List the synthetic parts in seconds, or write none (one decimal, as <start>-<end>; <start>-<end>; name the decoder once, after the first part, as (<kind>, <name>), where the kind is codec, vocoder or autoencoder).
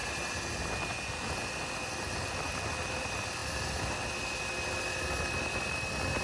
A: none